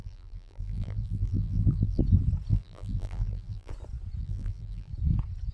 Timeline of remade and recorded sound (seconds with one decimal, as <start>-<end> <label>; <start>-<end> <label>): 0.0-2.0 remade; 2.0-2.5 recorded; 2.5-3.7 remade; 3.7-4.2 recorded; 4.2-4.9 remade; 4.9-5.5 recorded